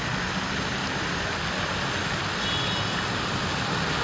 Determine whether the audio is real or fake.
real